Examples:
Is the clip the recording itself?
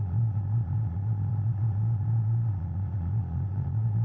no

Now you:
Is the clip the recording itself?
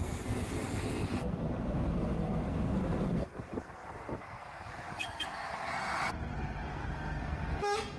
no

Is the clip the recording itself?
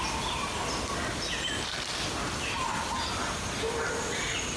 yes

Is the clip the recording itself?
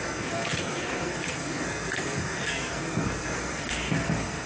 no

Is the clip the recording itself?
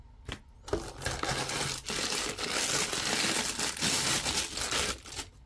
yes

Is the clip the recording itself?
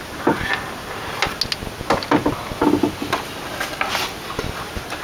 yes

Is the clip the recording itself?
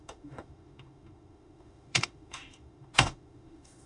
no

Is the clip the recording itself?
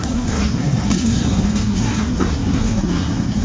no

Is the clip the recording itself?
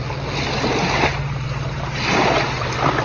yes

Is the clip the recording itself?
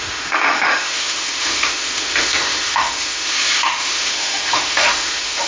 no